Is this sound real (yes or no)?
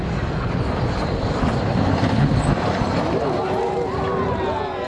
yes